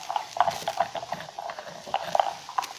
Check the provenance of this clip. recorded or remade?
recorded